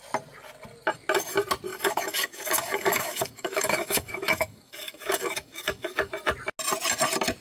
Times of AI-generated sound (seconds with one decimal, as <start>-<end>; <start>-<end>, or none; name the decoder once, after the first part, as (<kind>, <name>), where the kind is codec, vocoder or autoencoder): 1.7-6.1 (codec, DAC)